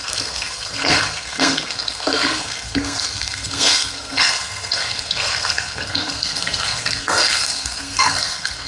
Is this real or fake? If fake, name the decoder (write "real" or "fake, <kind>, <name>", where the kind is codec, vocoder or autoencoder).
fake, codec, SNAC